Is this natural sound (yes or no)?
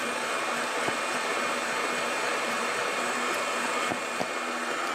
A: no